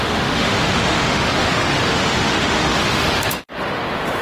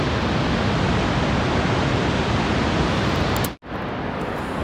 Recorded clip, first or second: second